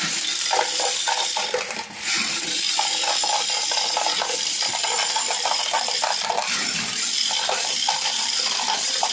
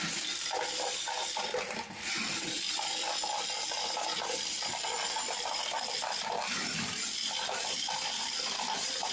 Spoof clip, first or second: first